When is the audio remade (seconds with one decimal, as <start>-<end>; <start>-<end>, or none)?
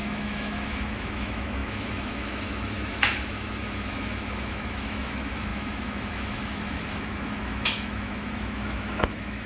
0.0-9.5